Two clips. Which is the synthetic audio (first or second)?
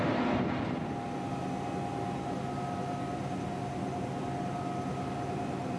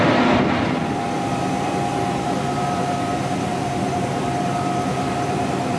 second